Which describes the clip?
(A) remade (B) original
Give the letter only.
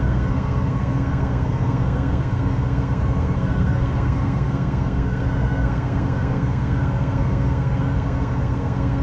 A